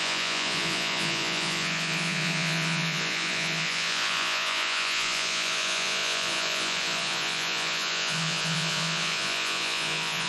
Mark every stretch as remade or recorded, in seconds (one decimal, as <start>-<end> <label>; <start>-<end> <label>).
0.0-10.3 remade